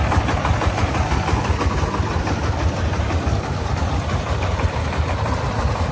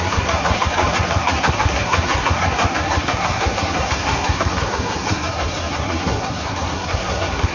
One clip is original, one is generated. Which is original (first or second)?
first